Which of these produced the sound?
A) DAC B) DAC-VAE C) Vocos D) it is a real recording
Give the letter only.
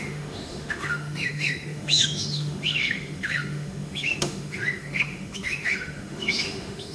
B